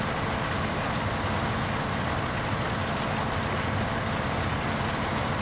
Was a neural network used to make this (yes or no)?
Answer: no